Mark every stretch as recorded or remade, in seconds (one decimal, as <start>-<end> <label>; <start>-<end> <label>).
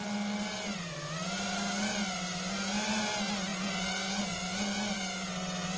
0.0-5.8 recorded